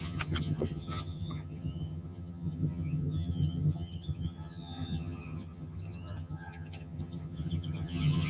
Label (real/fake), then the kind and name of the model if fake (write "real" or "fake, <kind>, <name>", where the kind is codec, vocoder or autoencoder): fake, vocoder, HiFi-GAN